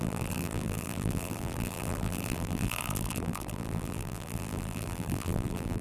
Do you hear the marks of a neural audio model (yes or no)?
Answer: yes